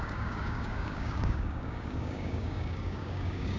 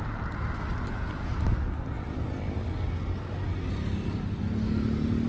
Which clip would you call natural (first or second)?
second